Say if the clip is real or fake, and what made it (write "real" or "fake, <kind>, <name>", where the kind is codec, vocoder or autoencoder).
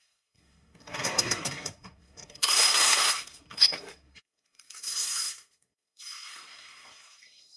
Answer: fake, codec, SNAC